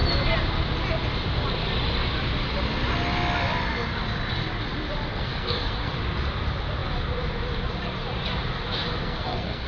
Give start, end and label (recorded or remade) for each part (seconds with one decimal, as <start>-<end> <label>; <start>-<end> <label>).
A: 0.0-5.1 recorded; 5.1-5.9 remade; 5.9-8.9 recorded; 8.9-9.7 remade